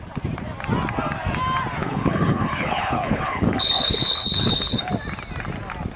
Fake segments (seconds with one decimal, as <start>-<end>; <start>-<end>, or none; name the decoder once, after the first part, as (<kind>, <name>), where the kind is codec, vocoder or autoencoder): 1.8-4.9 (codec, HILCodec)